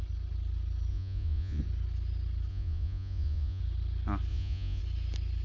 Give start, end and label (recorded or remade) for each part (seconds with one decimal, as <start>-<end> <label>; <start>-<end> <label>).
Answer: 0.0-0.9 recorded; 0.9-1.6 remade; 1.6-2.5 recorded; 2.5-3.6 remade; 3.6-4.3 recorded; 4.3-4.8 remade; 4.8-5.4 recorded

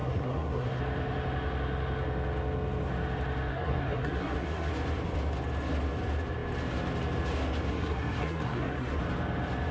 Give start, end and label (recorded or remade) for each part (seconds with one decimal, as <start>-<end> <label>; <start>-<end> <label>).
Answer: 0.0-0.8 remade; 0.8-3.5 recorded; 3.5-4.7 remade; 4.7-7.7 recorded; 7.7-9.0 remade; 9.0-9.7 recorded

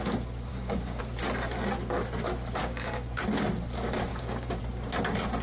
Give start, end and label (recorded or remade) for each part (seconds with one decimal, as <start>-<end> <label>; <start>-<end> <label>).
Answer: 0.0-0.5 recorded; 0.5-1.0 remade; 1.0-2.6 recorded; 2.6-3.2 remade; 3.2-4.1 recorded; 4.1-4.6 remade; 4.6-5.4 recorded